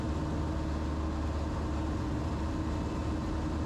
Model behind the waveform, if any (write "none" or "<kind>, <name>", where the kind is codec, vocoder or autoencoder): none